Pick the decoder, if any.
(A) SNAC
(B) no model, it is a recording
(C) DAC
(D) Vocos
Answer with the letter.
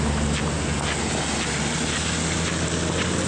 B